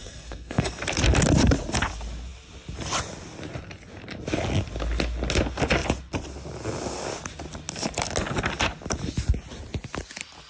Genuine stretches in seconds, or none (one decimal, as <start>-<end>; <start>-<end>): 0.8-10.5

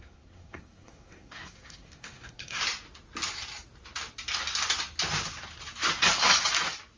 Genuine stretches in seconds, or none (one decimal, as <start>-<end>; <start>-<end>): 2.6-7.0